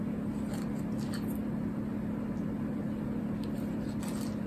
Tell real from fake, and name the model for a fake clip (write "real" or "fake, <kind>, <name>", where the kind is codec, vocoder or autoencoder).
real